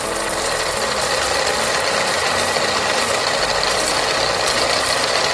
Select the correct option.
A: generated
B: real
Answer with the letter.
B